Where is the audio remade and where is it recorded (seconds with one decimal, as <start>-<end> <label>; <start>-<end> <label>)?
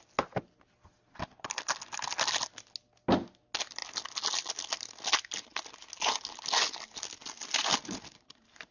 0.0-8.7 recorded